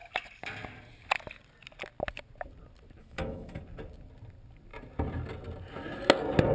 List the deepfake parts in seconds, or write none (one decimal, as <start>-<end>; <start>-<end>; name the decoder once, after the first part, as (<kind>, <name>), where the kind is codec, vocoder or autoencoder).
3.0-3.6 (autoencoder, DAC-VAE)